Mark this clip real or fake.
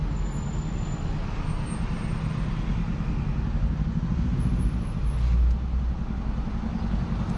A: real